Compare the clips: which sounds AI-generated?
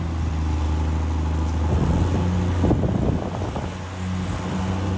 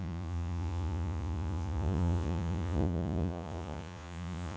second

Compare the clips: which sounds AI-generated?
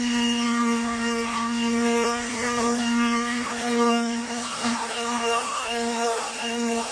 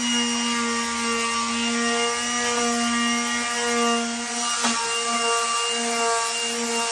first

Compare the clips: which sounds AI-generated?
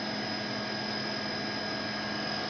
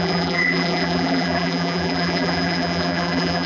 second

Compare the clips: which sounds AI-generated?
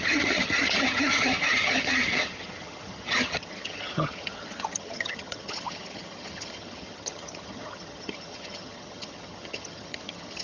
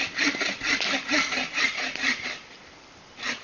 first